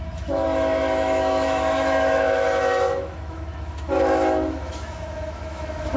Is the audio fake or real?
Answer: fake